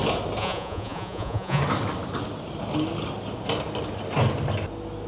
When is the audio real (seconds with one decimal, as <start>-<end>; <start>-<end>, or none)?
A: 0.0-0.4; 1.6-5.1